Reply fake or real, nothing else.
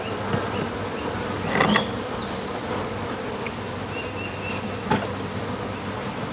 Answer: real